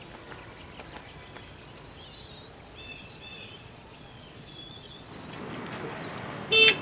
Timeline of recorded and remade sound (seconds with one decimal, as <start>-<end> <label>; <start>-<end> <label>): 0.0-2.9 recorded; 2.9-5.1 remade; 5.1-6.8 recorded

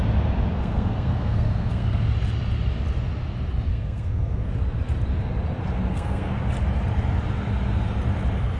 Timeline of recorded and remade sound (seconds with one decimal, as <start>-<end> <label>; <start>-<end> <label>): 0.0-0.5 recorded; 0.5-2.0 remade; 2.0-3.7 recorded; 3.7-4.5 remade; 4.5-5.9 recorded; 5.9-6.4 remade; 6.4-8.6 recorded

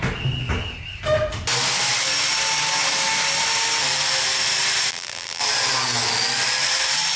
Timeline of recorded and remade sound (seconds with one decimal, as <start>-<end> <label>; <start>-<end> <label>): 0.0-4.9 recorded; 4.9-5.4 remade; 5.4-7.2 recorded

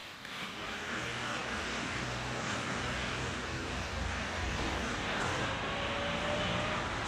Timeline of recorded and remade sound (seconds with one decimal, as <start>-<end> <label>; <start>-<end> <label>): 0.0-5.4 remade; 5.4-7.1 recorded

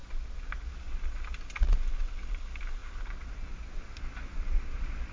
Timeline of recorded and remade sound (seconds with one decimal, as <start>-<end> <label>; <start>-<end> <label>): 0.0-5.1 recorded

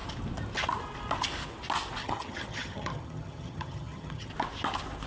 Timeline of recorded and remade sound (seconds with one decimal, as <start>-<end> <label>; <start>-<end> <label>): 0.0-2.0 recorded; 2.0-4.3 remade; 4.3-5.1 recorded